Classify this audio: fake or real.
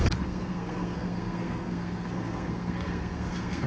fake